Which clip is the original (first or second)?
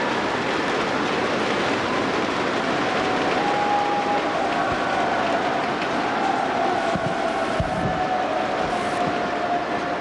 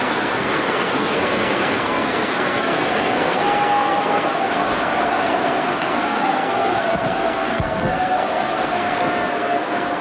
first